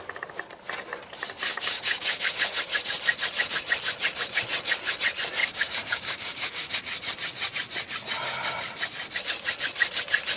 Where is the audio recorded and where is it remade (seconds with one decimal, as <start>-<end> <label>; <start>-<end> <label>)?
0.0-1.5 recorded; 1.5-2.6 remade; 2.6-5.4 recorded; 5.4-6.7 remade; 6.7-10.4 recorded